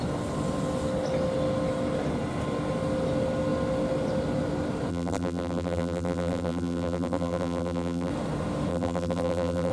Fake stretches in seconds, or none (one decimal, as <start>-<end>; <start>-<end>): 4.9-8.1; 8.7-9.7